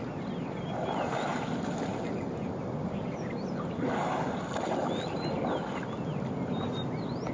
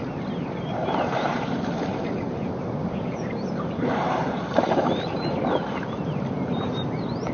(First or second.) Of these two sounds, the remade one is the second